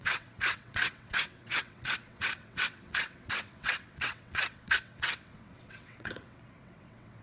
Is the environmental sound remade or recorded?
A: remade